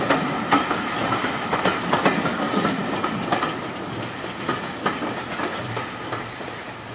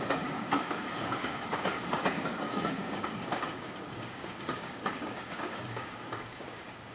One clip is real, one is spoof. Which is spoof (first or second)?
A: second